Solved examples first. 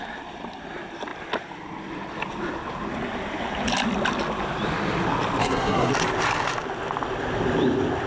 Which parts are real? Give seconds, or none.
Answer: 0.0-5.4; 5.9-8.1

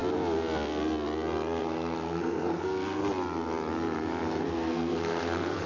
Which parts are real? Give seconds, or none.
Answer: 0.0-1.6; 3.0-4.4